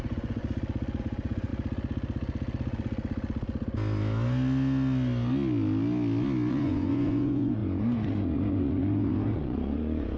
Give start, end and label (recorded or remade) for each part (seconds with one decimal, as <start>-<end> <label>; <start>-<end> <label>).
0.0-0.4 remade; 0.4-1.0 recorded; 1.0-1.5 remade; 1.5-6.5 recorded; 6.5-10.2 remade